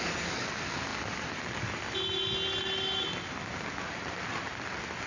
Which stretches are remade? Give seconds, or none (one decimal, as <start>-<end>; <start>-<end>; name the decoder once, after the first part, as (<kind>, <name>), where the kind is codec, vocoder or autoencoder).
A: none